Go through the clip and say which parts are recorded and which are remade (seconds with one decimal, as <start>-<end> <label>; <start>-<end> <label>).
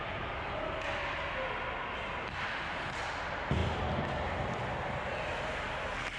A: 0.0-6.2 recorded